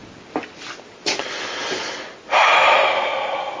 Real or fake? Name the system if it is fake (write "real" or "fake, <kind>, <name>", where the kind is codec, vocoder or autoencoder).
real